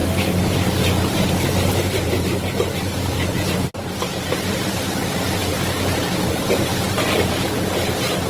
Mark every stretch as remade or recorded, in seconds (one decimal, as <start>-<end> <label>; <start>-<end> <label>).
0.0-1.0 recorded; 1.0-8.3 remade